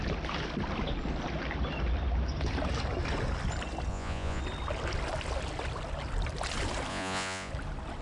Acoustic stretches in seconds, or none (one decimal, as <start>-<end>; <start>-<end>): 0.0-3.9; 4.4-6.9; 7.5-8.0